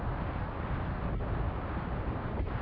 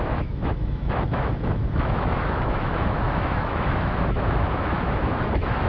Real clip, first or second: first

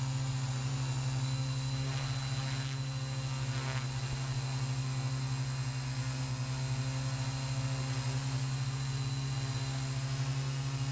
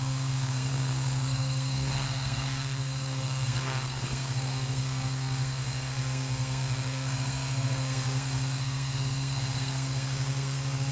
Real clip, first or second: first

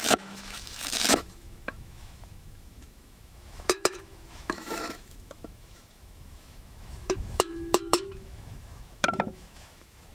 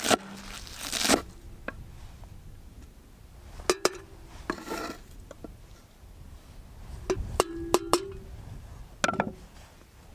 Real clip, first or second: second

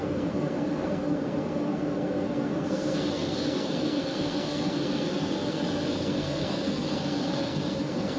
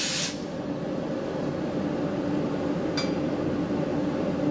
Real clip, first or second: second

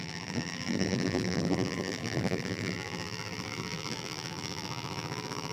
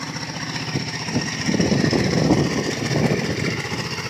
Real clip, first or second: second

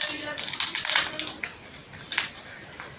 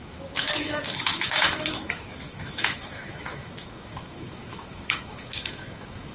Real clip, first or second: first